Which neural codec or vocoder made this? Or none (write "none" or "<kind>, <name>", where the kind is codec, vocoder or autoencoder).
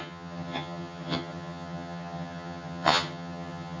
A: vocoder, HiFi-GAN